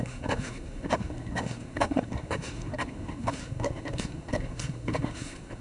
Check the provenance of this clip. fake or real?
fake